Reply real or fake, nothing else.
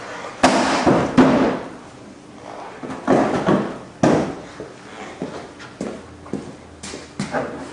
real